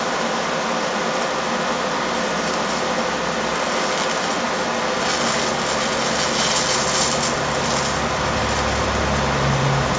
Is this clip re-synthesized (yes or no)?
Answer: no